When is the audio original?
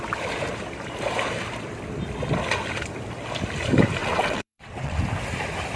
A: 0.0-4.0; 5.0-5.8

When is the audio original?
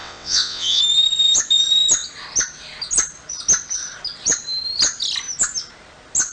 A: 0.8-6.3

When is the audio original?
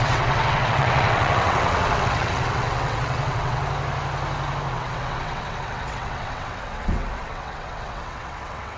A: 3.6-4.7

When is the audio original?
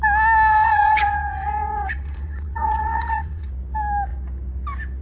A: 0.0-0.5; 3.5-5.0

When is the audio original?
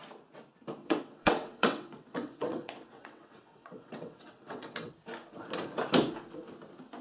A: 0.0-0.8; 4.9-7.0